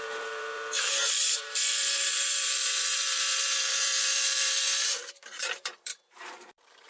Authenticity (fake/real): fake